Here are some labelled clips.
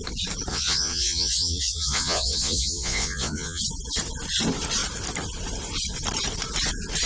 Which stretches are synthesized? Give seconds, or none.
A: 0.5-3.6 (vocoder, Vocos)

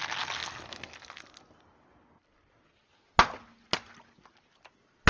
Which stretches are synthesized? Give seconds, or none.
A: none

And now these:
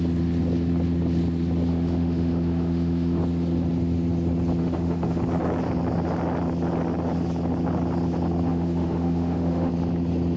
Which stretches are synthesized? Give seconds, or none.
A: 1.7-3.2 (autoencoder, DAC-VAE); 4.6-5.2; 8.5-9.7